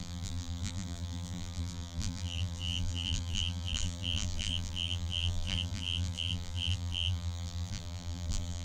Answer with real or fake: fake